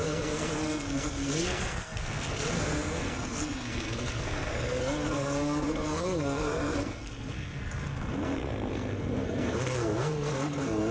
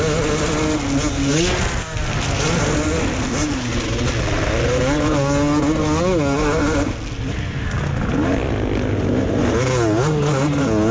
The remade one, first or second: first